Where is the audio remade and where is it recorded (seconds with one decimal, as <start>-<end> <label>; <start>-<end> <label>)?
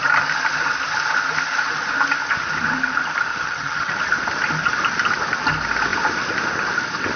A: 0.0-3.3 recorded; 3.3-3.9 remade; 3.9-7.2 recorded